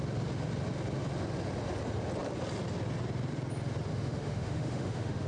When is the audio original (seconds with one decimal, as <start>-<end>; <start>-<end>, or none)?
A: 0.0-3.9